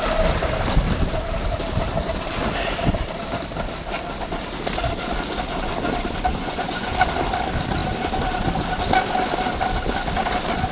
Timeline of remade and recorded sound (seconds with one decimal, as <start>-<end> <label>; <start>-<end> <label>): 0.0-6.3 recorded; 6.3-6.9 remade; 6.9-10.7 recorded